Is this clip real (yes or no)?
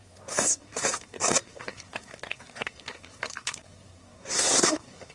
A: no